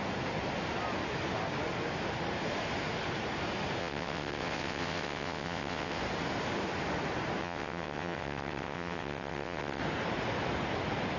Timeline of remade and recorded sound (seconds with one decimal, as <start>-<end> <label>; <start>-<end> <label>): 0.0-3.8 recorded; 3.8-6.0 remade; 6.0-7.4 recorded; 7.4-9.8 remade; 9.8-11.2 recorded